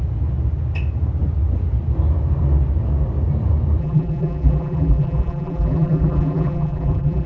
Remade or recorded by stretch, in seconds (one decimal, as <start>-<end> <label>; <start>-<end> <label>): 0.0-3.8 recorded; 3.8-7.3 remade